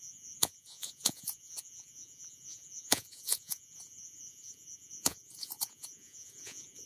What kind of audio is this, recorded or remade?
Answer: remade